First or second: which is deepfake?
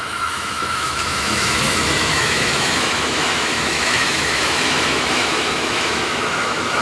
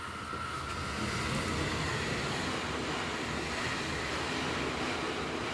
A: first